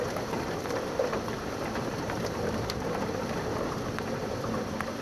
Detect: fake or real fake